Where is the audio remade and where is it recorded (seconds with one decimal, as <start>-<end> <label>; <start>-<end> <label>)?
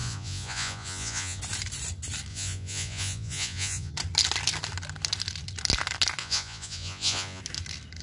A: 0.0-1.4 remade; 1.4-2.3 recorded; 2.3-3.9 remade; 3.9-6.2 recorded; 6.2-7.4 remade; 7.4-8.0 recorded